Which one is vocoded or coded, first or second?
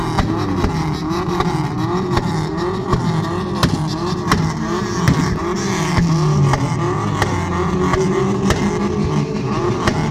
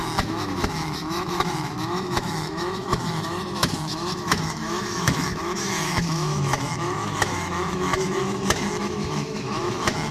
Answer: second